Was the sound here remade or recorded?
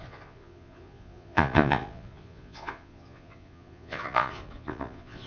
remade